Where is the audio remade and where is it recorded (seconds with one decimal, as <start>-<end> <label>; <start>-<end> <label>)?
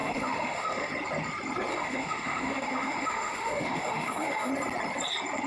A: 0.0-0.9 remade; 0.9-1.7 recorded; 1.7-4.5 remade; 4.5-5.5 recorded